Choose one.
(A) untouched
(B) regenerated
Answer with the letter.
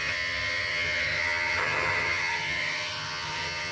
B